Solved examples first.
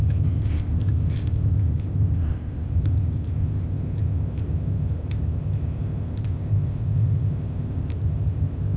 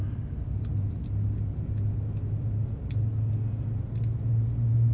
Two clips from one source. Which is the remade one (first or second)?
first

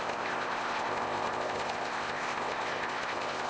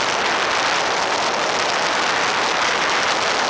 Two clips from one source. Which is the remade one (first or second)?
first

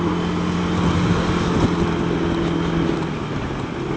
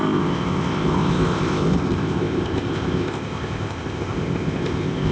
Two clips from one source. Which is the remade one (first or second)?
second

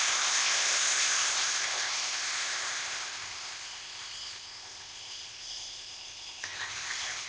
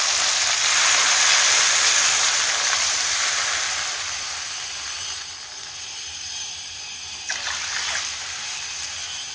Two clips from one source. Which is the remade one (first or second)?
first